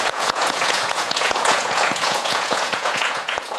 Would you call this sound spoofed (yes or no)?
yes